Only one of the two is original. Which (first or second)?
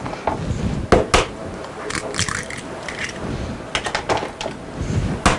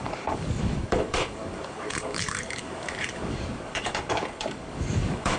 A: first